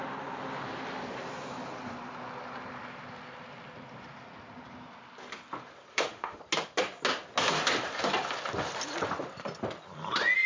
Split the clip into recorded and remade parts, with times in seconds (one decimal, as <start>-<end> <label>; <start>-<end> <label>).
0.0-5.9 recorded; 5.9-6.4 remade; 6.4-10.5 recorded